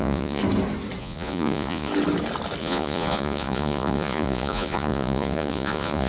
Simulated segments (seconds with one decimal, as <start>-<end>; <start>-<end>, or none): 0.0-0.4; 1.0-1.9; 2.6-6.1